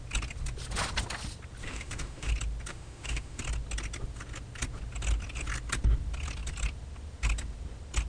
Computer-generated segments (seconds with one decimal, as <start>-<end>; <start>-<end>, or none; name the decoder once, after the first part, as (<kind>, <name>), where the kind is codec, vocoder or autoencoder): 1.6-2.3 (autoencoder, DAC-VAE); 2.7-3.4